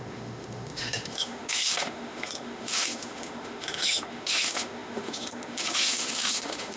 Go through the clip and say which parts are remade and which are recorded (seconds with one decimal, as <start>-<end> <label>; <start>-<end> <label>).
0.0-6.8 remade